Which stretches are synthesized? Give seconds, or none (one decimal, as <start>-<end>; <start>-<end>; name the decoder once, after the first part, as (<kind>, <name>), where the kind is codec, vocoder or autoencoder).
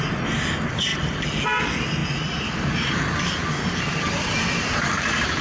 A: none